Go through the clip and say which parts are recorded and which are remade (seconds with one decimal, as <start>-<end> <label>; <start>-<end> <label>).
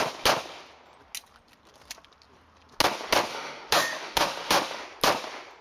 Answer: 0.0-3.3 recorded; 3.3-4.8 remade; 4.8-5.6 recorded